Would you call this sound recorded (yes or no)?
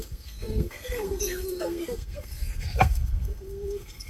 no